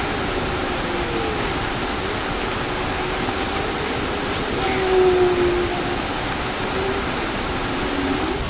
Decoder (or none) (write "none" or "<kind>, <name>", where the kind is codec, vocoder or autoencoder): none